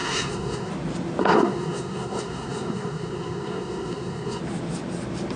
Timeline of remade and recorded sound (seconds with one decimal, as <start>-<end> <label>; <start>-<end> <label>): 0.0-0.7 remade; 0.7-1.2 recorded; 1.2-4.4 remade; 4.4-5.4 recorded